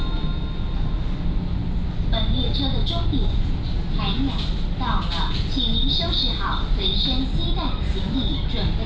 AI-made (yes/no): no